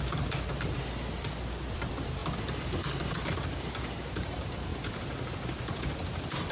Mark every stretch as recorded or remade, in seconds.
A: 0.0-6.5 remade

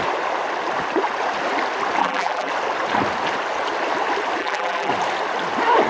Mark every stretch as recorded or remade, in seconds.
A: 0.0-2.0 recorded; 2.0-2.5 remade; 2.5-4.4 recorded; 4.4-4.9 remade; 4.9-5.9 recorded

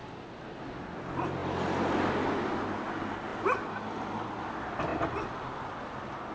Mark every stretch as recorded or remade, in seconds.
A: 0.0-6.3 recorded